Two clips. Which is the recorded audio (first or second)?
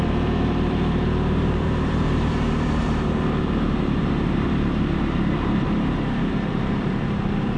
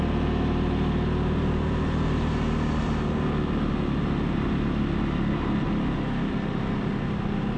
second